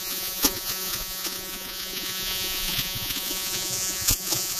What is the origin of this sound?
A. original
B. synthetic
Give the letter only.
B